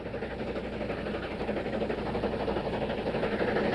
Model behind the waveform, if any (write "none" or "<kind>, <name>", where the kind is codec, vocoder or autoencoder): none